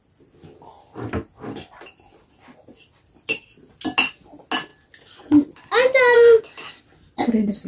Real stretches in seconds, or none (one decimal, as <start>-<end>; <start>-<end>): 0.0-7.7